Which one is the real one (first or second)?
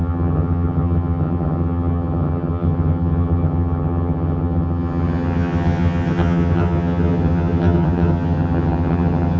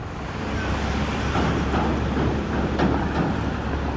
second